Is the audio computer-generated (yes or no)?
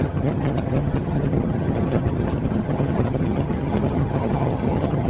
yes